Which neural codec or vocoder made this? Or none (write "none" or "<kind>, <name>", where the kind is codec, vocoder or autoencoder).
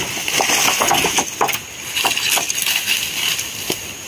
none